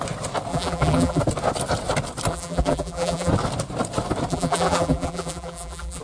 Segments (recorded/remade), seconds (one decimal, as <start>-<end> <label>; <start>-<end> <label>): 0.0-0.5 recorded; 0.5-1.2 remade; 1.2-2.3 recorded; 2.3-3.3 remade; 3.3-4.3 recorded; 4.3-6.0 remade